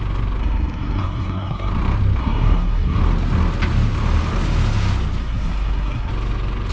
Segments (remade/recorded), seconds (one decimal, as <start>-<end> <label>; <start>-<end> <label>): 0.0-0.4 recorded; 0.4-1.7 remade; 1.7-2.2 recorded; 2.2-3.0 remade; 3.0-5.2 recorded; 5.2-6.1 remade; 6.1-6.7 recorded